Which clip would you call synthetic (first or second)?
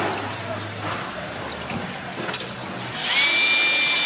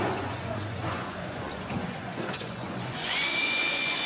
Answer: second